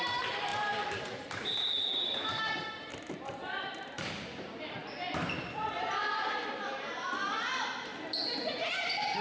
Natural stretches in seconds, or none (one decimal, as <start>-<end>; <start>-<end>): 4.8-5.4; 7.9-8.5